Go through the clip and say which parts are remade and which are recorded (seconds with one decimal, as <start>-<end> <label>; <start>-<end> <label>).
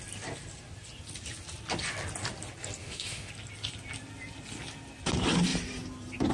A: 0.0-2.8 recorded; 2.8-3.3 remade; 3.3-6.3 recorded